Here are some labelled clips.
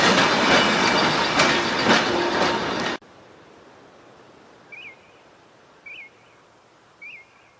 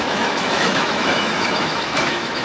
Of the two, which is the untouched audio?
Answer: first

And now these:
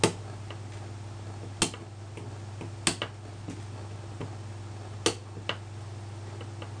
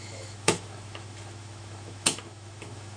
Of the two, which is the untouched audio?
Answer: first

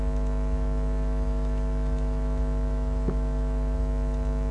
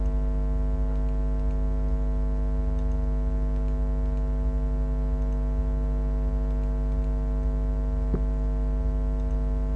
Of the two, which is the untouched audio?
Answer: second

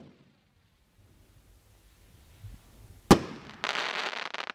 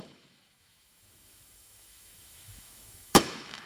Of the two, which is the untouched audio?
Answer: first